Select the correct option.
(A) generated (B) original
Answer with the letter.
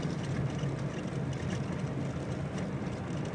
B